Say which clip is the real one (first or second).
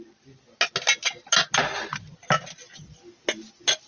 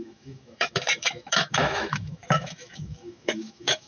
first